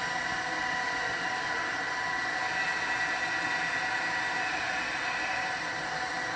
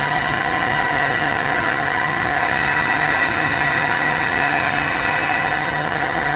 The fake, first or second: second